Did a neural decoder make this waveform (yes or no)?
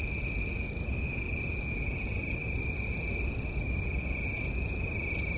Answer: no